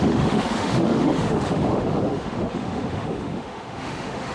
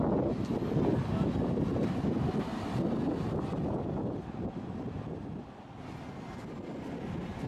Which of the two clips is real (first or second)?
second